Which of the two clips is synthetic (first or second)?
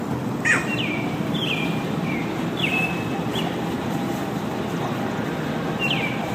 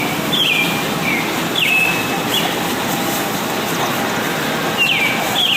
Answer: first